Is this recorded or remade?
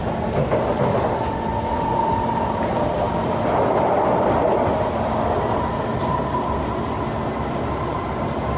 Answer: recorded